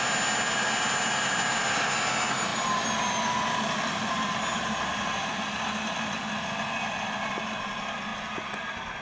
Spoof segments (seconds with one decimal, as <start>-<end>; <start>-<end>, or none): none